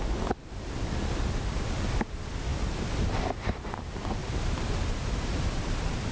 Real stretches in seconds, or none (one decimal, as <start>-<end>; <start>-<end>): 0.0-2.5; 3.1-4.2